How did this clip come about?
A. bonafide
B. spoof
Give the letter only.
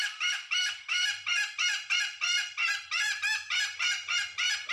A